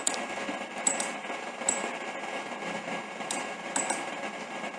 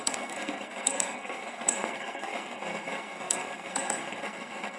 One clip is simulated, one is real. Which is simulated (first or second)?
second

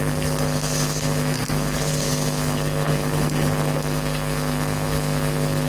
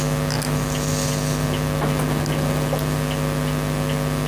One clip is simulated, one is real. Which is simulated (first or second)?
first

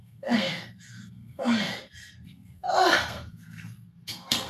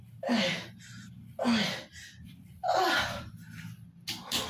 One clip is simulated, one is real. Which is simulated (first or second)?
first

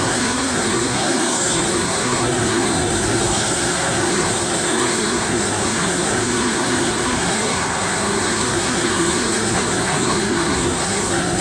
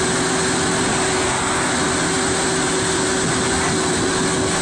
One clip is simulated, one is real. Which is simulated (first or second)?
first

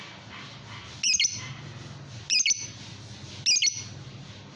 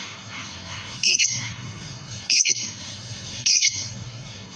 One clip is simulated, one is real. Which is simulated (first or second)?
second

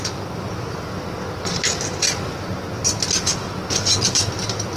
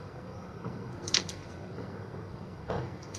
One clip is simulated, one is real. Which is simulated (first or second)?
second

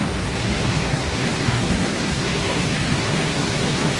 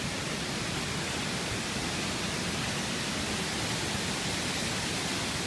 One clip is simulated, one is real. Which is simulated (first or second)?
first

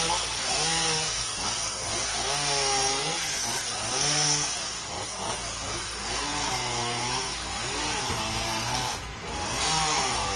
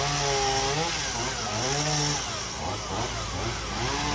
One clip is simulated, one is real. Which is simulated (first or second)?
first